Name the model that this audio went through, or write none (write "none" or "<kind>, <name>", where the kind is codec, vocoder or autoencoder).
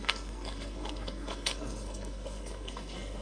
codec, SNAC